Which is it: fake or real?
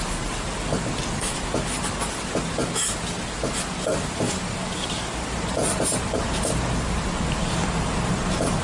real